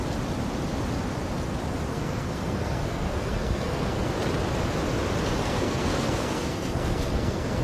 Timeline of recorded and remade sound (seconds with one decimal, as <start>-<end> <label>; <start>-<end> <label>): 0.0-1.9 recorded; 1.9-4.1 remade; 4.1-5.4 recorded; 5.4-7.6 remade